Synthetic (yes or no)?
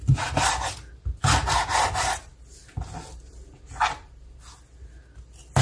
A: no